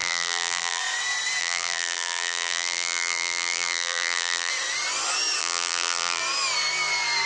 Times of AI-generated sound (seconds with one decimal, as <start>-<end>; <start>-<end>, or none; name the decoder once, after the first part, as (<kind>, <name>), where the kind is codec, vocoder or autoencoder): 0.0-0.8 (vocoder, BigVGAN v2); 1.4-4.5; 5.4-6.2

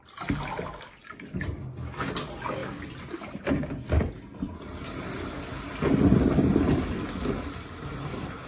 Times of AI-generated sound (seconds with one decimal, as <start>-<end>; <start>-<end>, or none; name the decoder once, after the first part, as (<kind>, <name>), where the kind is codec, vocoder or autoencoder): none

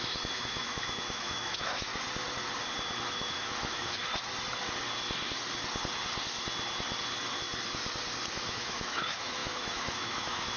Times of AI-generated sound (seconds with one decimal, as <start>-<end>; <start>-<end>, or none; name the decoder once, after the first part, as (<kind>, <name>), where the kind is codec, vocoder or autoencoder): 0.0-1.9 (autoencoder, DAC-VAE); 3.1-4.0; 8.5-10.6